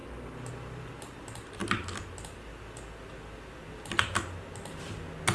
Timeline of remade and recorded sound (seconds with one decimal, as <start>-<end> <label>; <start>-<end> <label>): 0.0-5.3 recorded